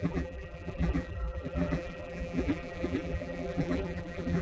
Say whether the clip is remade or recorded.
remade